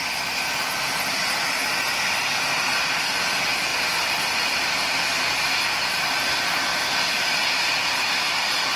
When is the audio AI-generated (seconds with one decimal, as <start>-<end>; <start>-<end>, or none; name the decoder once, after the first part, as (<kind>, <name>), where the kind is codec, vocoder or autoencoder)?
1.6-2.2 (vocoder, BigVGAN v2); 3.7-5.4; 6.7-8.8